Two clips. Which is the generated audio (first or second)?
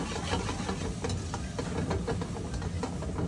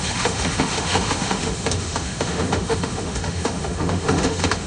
second